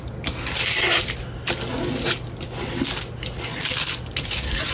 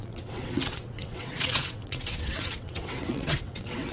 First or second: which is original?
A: first